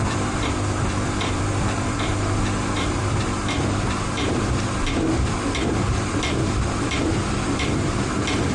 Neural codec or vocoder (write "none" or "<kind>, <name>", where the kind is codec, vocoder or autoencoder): vocoder, BigVGAN v2